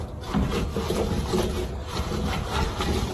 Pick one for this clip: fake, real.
real